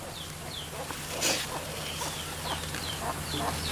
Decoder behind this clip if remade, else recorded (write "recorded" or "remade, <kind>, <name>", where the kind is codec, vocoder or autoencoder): recorded